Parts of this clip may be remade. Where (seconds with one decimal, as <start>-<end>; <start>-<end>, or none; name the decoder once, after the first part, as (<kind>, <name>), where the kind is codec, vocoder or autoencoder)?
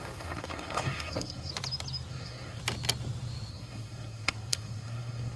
0.0-1.5 (codec, SNAC); 2.1-2.6; 3.5-5.4